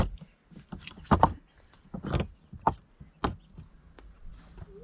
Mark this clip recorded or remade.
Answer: recorded